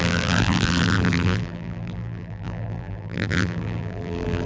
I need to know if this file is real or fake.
fake